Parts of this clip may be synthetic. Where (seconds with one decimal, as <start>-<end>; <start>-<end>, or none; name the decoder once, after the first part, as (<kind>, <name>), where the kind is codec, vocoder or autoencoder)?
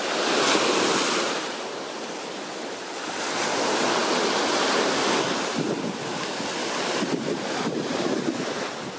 6.6-8.2 (vocoder, BigVGAN v2)